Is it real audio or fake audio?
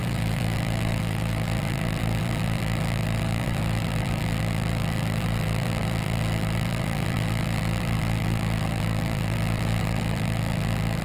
fake